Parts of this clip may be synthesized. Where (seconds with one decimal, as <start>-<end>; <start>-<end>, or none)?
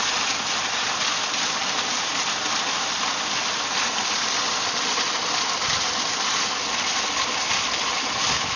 none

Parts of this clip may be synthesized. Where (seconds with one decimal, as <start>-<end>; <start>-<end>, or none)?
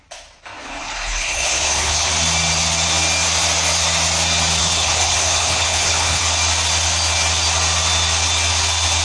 0.6-2.1; 4.6-6.2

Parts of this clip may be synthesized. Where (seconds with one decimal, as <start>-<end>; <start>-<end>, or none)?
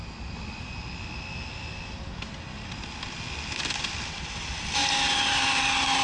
3.6-4.8